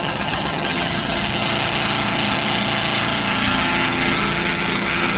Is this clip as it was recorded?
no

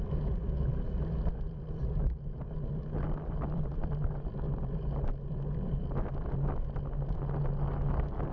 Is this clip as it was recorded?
yes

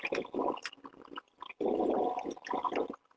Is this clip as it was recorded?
yes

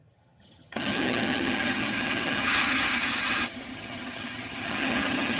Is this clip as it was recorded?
no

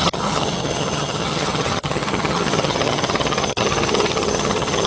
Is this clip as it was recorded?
no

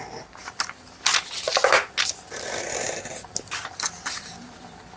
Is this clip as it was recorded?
yes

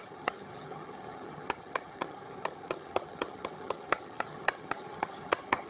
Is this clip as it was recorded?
no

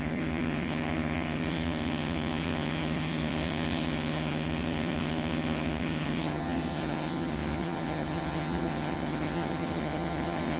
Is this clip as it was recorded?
no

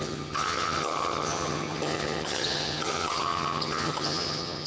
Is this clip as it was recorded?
no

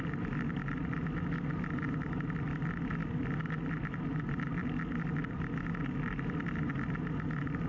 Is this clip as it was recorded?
yes